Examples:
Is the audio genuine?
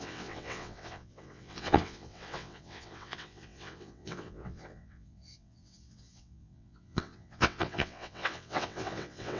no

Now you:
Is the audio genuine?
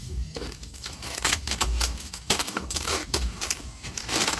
no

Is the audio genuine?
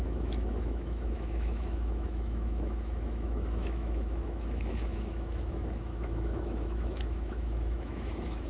no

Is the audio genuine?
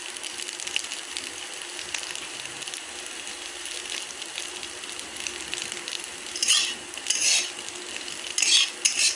yes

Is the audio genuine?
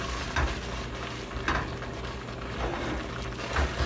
yes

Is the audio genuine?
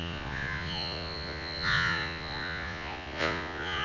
no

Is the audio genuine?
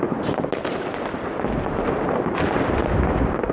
yes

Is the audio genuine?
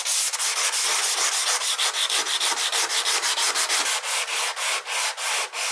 yes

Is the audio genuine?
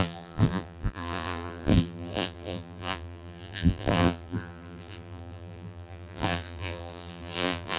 no